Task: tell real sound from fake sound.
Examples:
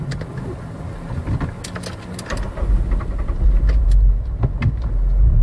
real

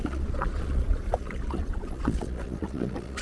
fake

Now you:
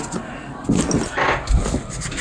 real